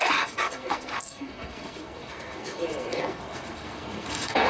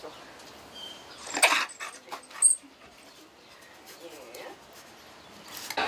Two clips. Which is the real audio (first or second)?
second